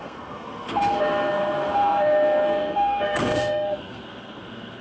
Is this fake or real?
fake